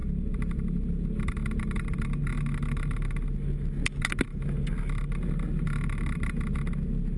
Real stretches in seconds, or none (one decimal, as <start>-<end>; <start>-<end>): 0.0-7.2